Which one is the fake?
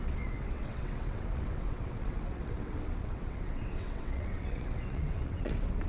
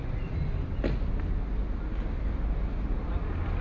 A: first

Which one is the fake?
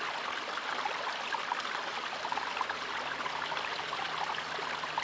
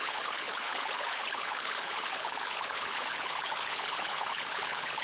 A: second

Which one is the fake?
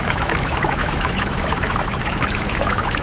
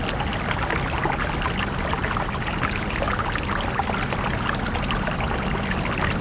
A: first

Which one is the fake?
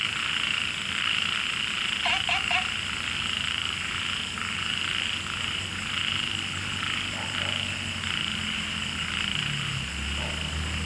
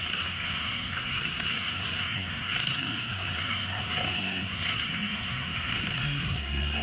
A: second